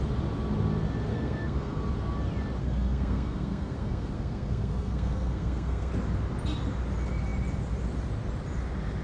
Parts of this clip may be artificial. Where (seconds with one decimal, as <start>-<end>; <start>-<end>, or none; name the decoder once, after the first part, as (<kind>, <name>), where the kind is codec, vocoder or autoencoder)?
1.1-1.8 (codec, SNAC); 2.6-5.9